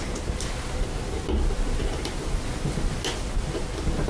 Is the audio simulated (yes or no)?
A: no